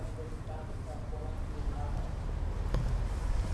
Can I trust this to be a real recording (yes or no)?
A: yes